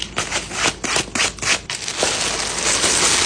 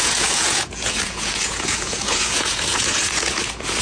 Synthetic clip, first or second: second